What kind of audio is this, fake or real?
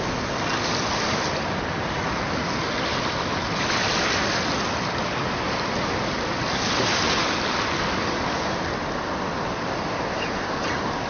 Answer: real